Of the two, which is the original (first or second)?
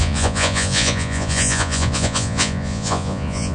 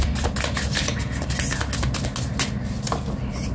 second